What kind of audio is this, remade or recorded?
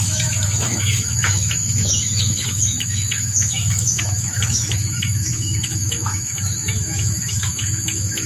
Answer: remade